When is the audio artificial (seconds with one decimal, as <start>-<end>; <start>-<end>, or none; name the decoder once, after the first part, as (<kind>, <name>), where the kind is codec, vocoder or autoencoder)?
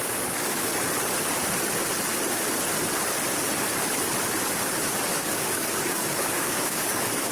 0.0-0.7 (codec, DAC); 5.1-7.3